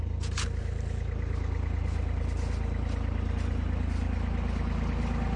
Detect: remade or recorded recorded